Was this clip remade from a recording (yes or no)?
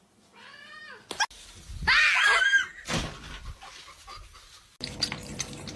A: no